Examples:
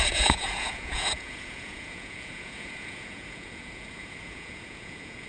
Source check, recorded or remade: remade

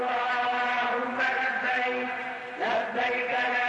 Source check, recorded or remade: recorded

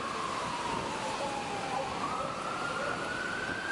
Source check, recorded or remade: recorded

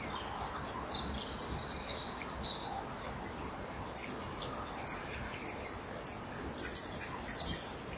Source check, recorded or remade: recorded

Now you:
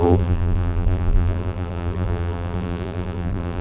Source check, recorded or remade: remade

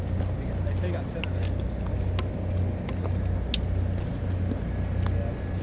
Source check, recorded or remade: recorded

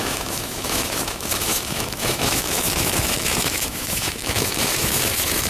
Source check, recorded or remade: remade